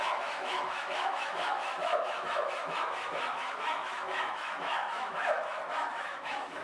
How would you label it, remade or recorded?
remade